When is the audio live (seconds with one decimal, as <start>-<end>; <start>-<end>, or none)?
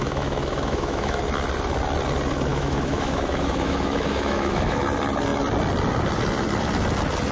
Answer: 1.2-2.5; 4.8-7.3